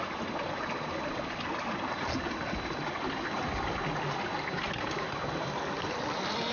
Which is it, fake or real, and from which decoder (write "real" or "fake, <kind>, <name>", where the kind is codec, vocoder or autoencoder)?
real